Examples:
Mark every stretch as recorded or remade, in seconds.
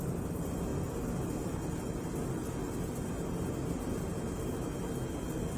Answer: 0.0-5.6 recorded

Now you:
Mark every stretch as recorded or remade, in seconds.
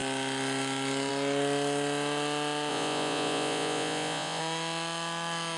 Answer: 0.0-2.7 recorded; 2.7-4.4 remade; 4.4-5.6 recorded